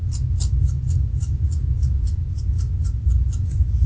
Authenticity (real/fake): real